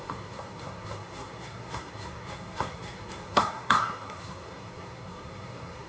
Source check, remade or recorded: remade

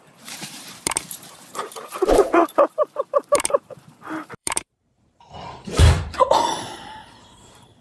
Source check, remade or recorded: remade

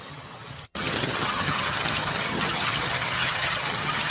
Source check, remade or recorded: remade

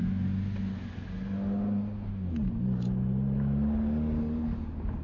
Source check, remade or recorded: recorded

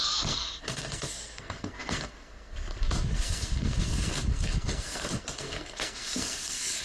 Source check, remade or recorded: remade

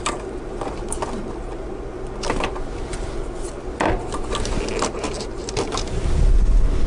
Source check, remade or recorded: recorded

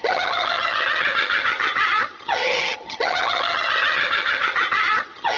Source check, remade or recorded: remade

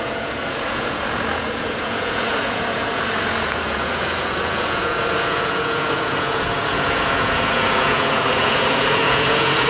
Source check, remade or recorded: remade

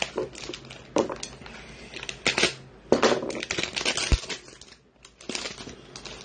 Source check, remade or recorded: recorded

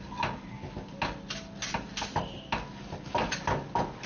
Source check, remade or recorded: recorded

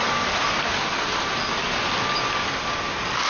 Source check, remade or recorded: recorded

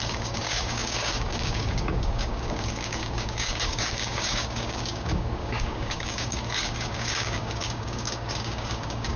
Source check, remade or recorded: remade